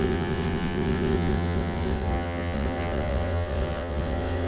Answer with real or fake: fake